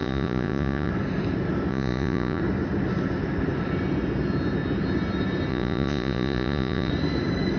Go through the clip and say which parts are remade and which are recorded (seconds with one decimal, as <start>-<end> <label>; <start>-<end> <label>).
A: 0.0-0.9 remade; 0.9-1.7 recorded; 1.7-2.4 remade; 2.4-5.5 recorded; 5.5-6.9 remade; 6.9-7.6 recorded